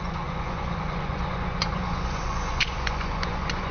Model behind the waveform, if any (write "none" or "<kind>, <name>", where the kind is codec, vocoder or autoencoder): vocoder, Vocos